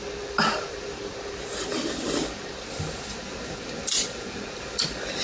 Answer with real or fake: fake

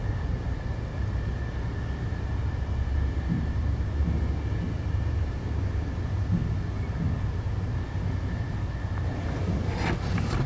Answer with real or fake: real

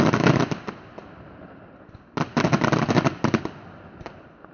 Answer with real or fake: real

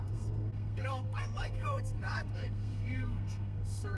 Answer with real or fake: fake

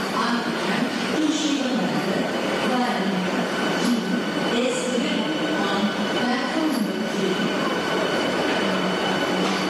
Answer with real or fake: fake